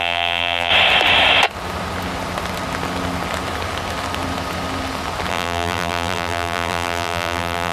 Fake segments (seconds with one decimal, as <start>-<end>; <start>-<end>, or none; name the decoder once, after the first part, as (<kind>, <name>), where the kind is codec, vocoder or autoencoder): 0.0-0.7 (vocoder, BigVGAN v2); 5.3-7.7